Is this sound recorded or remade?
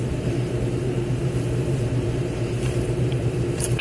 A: remade